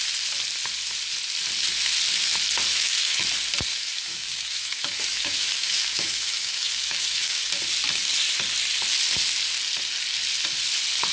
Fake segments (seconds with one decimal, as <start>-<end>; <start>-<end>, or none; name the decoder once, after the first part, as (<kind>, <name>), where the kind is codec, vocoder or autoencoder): 2.7-3.2 (autoencoder, DAC-VAE); 3.7-7.5